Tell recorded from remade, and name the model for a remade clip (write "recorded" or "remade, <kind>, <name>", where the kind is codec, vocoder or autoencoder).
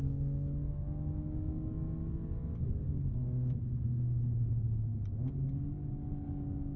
recorded